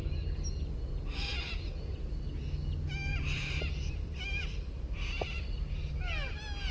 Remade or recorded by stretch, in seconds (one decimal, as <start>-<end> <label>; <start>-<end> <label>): 0.0-3.1 recorded; 3.1-5.4 remade; 5.4-6.7 recorded